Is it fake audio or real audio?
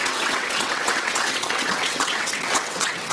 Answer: fake